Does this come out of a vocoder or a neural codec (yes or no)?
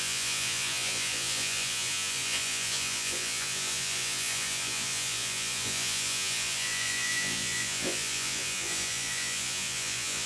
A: yes